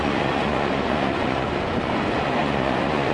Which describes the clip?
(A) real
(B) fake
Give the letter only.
B